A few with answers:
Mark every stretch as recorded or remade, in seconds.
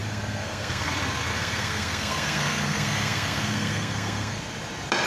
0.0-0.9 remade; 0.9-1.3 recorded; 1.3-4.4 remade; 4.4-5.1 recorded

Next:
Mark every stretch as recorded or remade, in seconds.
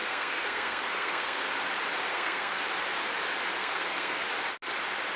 0.0-1.4 remade; 1.4-2.1 recorded; 2.1-2.6 remade; 2.6-3.6 recorded; 3.6-4.2 remade; 4.2-5.2 recorded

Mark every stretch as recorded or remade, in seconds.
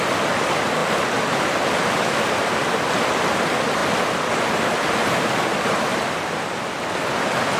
0.0-7.6 remade